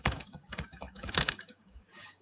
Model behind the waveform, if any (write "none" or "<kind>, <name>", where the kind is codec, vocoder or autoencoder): codec, DAC